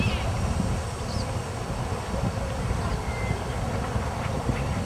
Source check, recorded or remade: recorded